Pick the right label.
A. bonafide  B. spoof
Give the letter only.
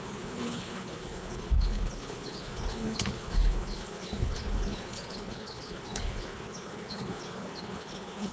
B